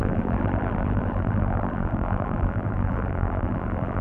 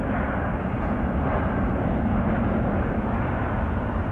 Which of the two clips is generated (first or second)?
first